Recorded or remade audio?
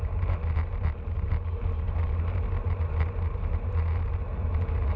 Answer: recorded